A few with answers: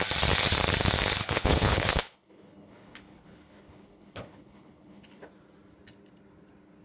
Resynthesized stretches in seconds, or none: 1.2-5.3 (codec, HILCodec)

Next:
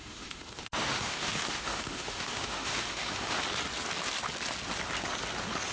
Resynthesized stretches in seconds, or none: 0.0-3.4 (autoencoder, DAC-VAE)

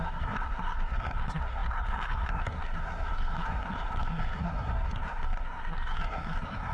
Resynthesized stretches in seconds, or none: 0.0-6.7 (codec, SNAC)

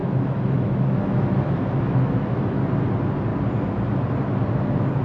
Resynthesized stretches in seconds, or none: 0.0-2.6 (autoencoder, DAC-VAE)

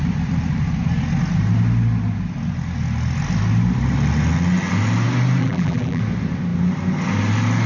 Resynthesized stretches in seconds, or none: 5.4-6.0 (vocoder, BigVGAN v2)